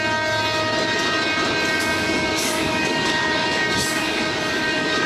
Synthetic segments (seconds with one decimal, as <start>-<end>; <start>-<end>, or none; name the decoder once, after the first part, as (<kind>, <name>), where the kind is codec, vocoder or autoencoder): 1.7-5.1 (codec, DAC)